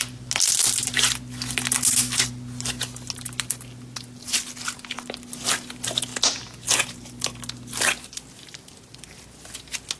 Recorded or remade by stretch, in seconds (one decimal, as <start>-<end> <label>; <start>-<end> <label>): 0.0-10.0 recorded